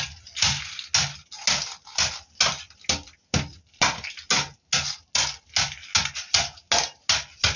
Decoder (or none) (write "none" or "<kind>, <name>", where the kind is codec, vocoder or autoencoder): none